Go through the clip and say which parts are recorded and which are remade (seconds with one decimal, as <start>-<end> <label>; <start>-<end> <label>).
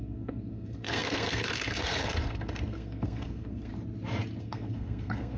0.0-3.7 remade; 3.7-4.4 recorded; 4.4-5.4 remade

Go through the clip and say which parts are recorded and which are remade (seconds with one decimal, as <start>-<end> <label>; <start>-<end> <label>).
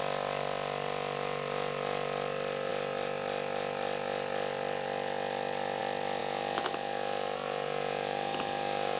0.0-6.2 recorded; 6.2-9.0 remade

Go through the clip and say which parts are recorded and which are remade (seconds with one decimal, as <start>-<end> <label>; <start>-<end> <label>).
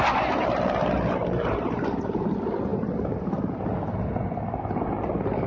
0.0-1.2 recorded; 1.2-2.0 remade; 2.0-5.5 recorded